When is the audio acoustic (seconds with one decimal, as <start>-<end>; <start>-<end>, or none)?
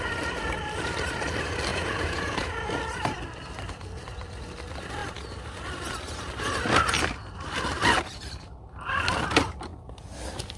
0.0-1.7; 2.5-10.6